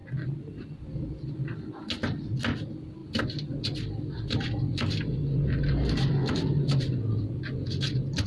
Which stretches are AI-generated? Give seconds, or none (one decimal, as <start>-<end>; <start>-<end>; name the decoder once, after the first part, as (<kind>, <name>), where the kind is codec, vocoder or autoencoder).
none